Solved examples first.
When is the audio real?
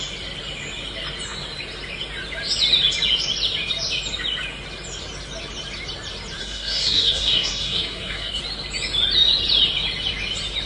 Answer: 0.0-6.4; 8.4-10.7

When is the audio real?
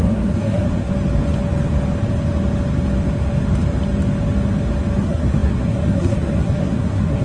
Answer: 0.9-5.0